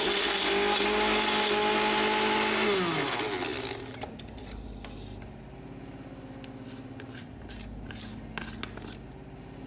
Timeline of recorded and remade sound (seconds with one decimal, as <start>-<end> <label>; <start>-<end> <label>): 0.0-9.7 recorded